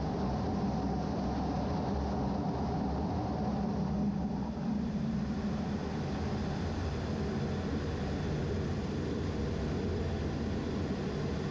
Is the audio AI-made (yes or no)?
no